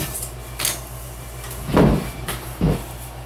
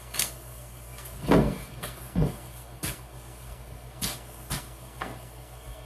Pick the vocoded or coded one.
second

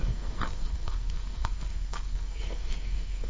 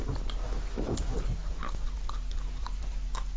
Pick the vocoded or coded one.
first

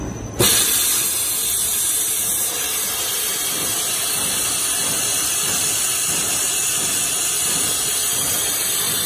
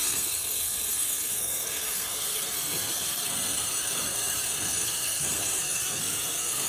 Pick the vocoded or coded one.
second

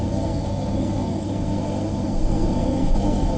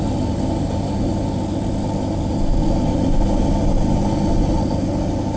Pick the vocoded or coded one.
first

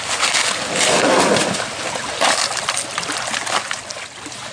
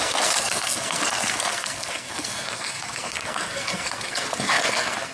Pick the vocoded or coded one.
second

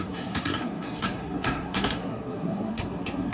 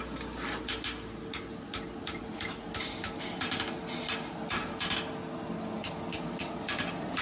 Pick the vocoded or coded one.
first